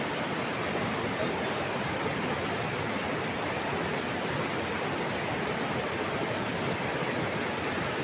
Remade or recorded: recorded